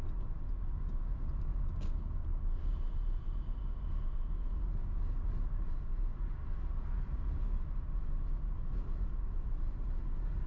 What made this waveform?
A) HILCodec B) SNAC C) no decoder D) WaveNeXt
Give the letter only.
C